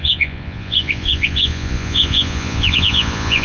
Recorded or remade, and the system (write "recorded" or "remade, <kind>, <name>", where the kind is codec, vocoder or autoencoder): remade, vocoder, Vocos